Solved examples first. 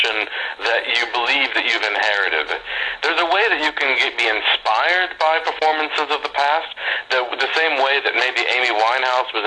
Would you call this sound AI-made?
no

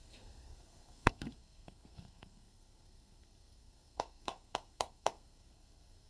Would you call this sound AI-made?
yes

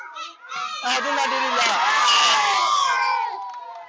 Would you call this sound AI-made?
no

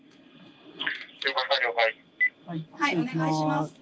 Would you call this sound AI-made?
no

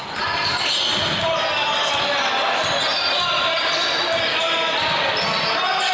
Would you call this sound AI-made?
no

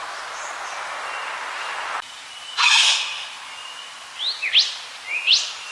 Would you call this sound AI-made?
no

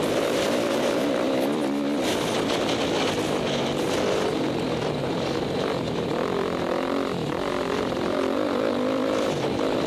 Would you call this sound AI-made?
yes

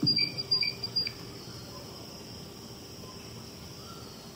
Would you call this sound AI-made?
no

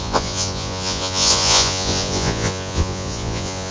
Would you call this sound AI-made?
yes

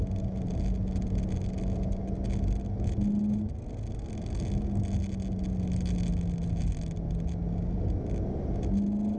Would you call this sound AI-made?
no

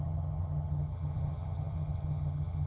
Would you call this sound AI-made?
yes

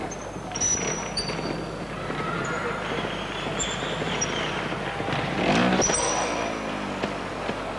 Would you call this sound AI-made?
no